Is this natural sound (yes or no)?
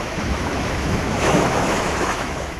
no